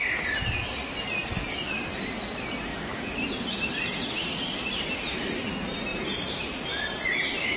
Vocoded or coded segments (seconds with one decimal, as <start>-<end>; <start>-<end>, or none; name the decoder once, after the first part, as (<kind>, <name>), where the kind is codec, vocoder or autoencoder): 2.7-4.9 (vocoder, BigVGAN v2); 5.9-6.7